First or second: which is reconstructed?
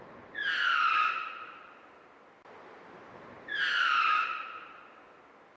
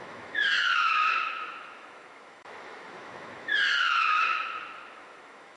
second